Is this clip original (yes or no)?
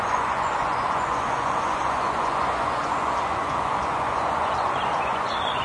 no